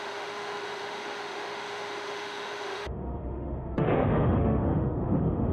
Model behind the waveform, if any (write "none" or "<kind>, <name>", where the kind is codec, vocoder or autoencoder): autoencoder, DAC-VAE